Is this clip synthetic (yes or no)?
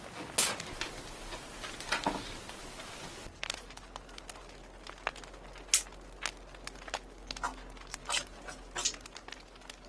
no